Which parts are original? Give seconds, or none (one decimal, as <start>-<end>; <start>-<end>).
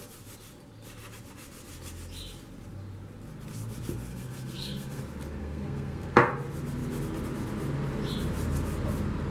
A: 0.0-4.1; 5.0-5.4; 6.3-9.3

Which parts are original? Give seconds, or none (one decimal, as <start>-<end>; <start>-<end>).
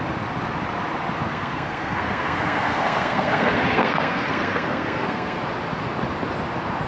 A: 0.0-1.3; 5.4-6.9